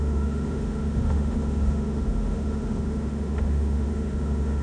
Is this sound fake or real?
fake